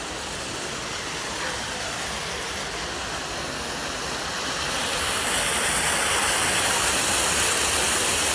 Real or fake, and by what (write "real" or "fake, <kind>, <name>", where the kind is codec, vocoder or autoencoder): real